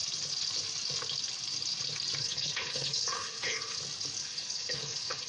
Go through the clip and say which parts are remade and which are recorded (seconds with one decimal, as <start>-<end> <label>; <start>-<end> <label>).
0.0-2.2 recorded; 2.2-3.8 remade; 3.8-4.2 recorded; 4.2-5.3 remade